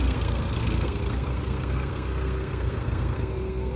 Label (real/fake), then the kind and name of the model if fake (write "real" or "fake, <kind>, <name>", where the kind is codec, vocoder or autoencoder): fake, codec, SNAC